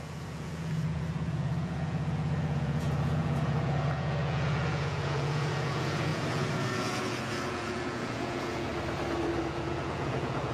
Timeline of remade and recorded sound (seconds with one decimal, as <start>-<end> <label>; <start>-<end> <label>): 0.0-8.7 remade; 8.7-9.4 recorded; 9.4-10.5 remade